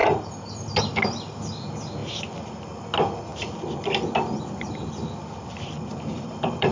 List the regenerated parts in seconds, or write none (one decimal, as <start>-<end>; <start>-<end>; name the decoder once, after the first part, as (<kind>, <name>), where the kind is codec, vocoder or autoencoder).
none